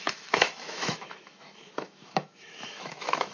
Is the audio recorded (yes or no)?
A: no